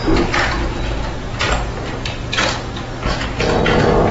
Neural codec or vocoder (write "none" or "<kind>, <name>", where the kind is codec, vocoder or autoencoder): none